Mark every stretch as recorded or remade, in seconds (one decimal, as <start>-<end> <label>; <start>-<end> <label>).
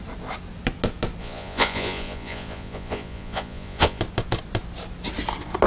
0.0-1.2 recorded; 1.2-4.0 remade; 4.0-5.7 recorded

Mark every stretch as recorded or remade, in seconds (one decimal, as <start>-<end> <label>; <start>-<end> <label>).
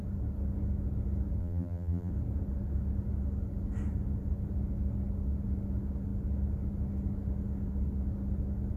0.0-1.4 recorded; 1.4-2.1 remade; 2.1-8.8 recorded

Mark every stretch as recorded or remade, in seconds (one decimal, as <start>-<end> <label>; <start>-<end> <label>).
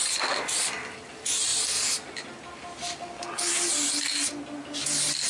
0.0-5.3 recorded